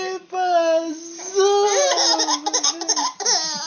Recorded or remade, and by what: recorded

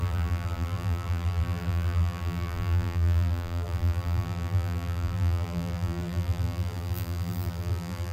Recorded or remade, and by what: remade, vocoder, BigVGAN v2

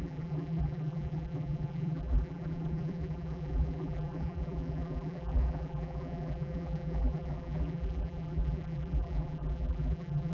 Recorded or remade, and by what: remade, vocoder, BigVGAN v2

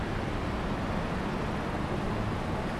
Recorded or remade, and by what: recorded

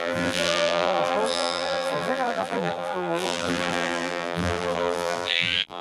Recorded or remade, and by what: remade, vocoder, BigVGAN v2